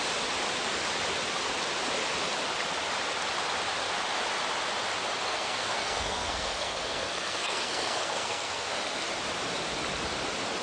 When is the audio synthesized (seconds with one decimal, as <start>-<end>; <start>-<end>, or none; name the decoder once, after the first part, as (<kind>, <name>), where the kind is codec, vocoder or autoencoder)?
5.3-8.7 (codec, SNAC)